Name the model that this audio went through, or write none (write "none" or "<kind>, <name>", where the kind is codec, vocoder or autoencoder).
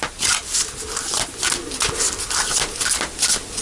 none